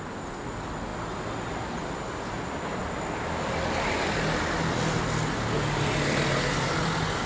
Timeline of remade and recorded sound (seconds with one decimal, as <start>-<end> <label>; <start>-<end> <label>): 0.0-7.3 recorded